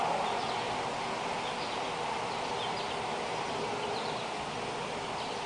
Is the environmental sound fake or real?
real